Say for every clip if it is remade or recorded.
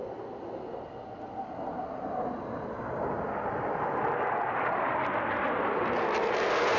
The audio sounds recorded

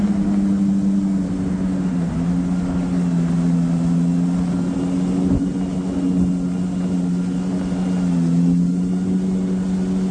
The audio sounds recorded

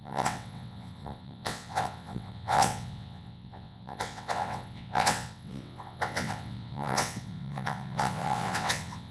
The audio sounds remade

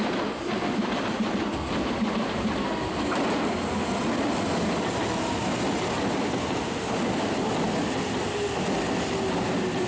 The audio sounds recorded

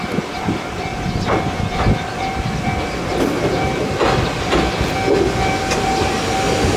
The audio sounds recorded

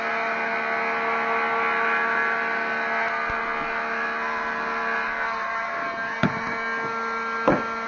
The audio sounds recorded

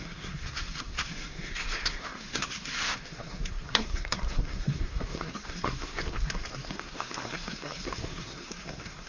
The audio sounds remade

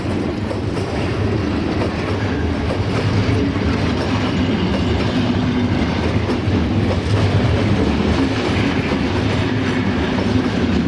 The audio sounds recorded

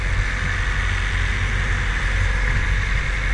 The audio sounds recorded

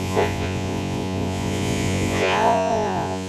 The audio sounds remade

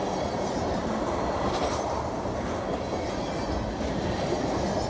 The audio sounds recorded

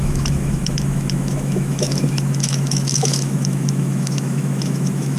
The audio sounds remade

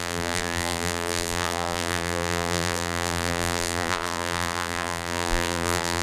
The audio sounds remade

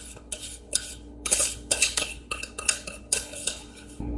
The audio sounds remade